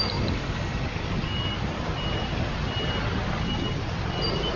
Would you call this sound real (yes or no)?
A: yes